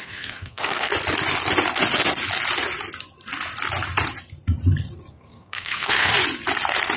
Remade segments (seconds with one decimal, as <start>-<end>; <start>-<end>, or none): 0.0-0.9; 5.1-6.1